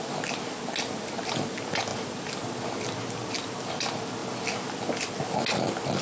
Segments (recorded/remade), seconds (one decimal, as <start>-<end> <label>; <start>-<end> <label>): 0.0-6.0 recorded